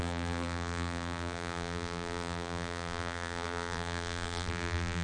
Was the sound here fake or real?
fake